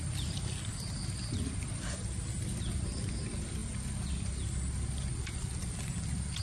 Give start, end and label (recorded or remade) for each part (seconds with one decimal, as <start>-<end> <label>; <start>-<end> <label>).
0.0-6.4 recorded